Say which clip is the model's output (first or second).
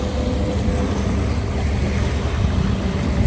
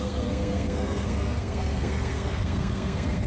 second